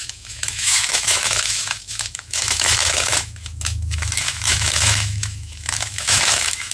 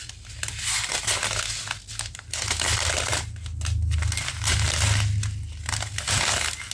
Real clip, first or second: second